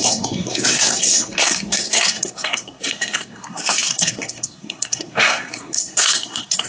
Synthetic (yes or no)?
yes